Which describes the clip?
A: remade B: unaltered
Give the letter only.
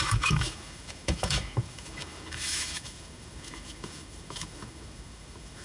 A